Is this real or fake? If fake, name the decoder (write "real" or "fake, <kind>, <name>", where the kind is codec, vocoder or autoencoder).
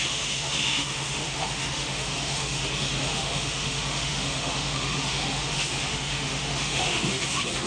fake, autoencoder, DAC-VAE